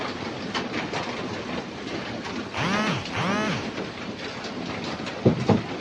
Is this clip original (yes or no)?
yes